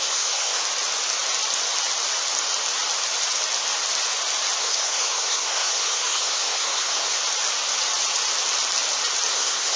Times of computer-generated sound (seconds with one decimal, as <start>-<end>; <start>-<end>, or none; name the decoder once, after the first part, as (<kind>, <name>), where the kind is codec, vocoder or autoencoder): 0.0-0.6 (codec, SNAC); 4.6-7.2; 9.3-9.8